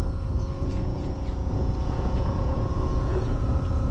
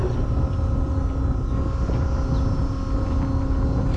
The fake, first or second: first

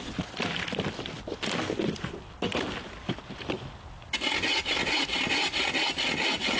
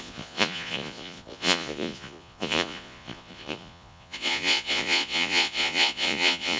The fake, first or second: second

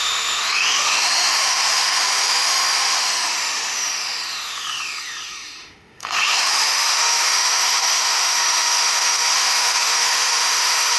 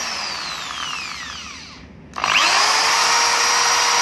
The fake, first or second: first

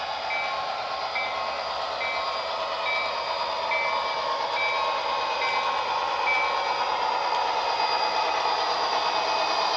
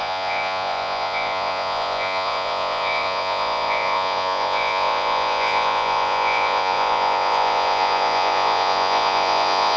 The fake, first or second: second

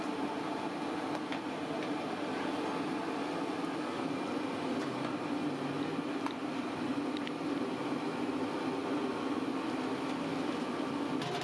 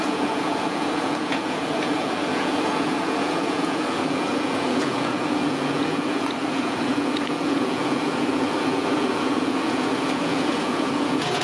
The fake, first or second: second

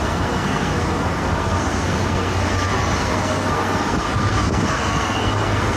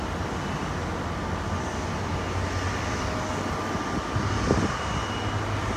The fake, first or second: first